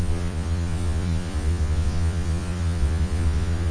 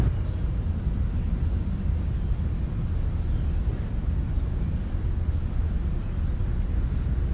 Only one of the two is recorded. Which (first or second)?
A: second